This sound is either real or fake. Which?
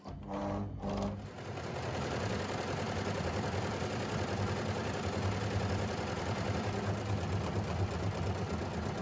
real